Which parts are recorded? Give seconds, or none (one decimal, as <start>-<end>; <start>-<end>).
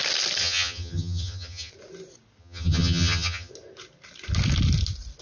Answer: 0.0-0.4; 1.7-2.4; 3.5-5.2